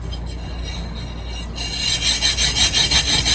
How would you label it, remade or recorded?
recorded